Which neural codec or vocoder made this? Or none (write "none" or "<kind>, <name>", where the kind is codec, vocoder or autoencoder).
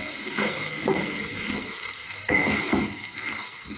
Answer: codec, SNAC